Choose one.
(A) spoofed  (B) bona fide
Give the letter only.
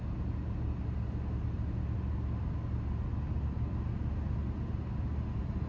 B